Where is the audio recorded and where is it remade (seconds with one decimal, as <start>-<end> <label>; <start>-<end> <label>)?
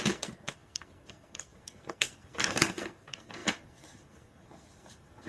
0.0-5.3 remade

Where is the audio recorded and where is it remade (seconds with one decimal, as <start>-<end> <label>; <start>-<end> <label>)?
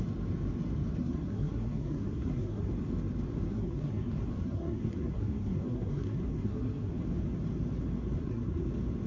0.0-1.0 recorded; 1.0-2.7 remade; 2.7-3.5 recorded; 3.5-6.9 remade; 6.9-8.2 recorded; 8.2-8.7 remade; 8.7-9.1 recorded